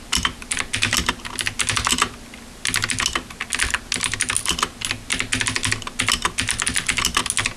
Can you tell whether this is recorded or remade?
recorded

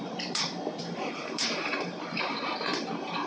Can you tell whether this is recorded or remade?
remade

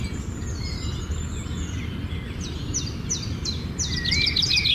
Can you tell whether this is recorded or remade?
recorded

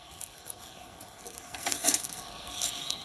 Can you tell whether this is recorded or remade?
remade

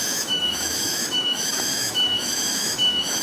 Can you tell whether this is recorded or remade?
remade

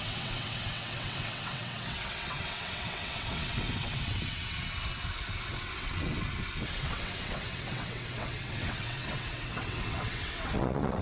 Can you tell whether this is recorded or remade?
remade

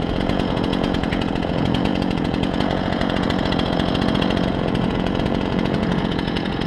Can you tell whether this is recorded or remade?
remade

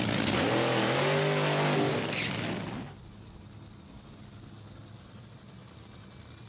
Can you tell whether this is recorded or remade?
recorded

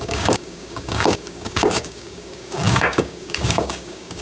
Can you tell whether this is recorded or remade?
remade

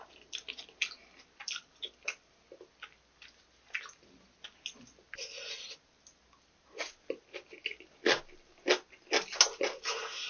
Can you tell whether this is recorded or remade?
recorded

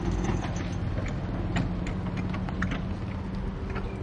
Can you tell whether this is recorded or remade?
recorded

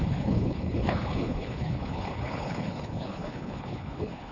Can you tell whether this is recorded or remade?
remade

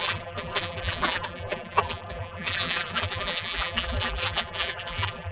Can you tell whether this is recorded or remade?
remade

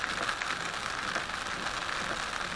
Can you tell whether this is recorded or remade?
recorded